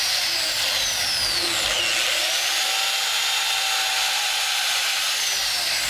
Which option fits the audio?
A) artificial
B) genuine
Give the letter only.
B